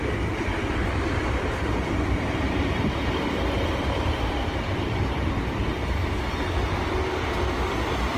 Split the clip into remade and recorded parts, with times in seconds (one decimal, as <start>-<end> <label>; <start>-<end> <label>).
0.0-0.8 recorded; 0.8-5.3 remade; 5.3-8.2 recorded